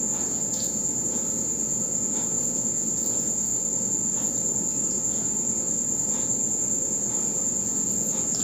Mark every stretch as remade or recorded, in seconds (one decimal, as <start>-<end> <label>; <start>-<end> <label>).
0.0-3.5 remade; 3.5-4.8 recorded; 4.8-8.4 remade